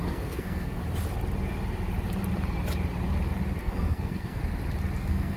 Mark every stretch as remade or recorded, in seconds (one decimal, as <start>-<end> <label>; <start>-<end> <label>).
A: 0.0-0.8 remade; 0.8-3.6 recorded; 3.6-4.4 remade; 4.4-5.0 recorded; 5.0-5.4 remade